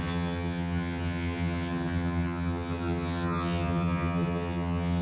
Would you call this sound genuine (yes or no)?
no